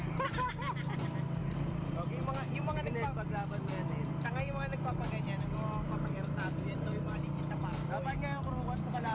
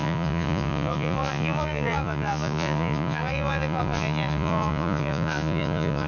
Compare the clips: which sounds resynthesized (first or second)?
second